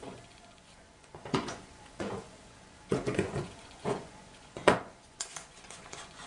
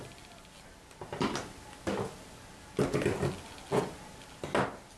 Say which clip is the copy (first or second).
first